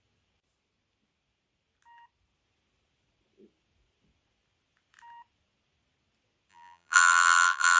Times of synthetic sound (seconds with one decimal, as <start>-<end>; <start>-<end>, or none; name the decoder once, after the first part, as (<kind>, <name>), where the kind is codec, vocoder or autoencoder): 6.5-7.8 (vocoder, BigVGAN v2)